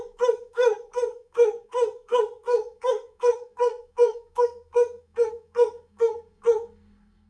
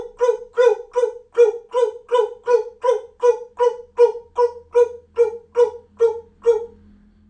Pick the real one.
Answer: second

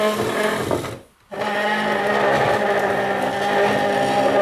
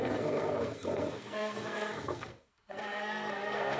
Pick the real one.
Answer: first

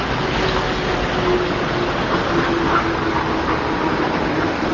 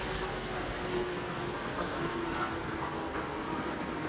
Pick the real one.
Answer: first